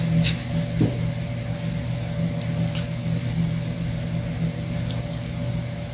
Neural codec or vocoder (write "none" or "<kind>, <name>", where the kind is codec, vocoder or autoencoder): none